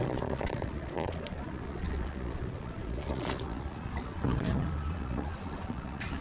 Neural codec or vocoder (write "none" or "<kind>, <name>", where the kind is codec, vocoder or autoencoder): vocoder, Vocos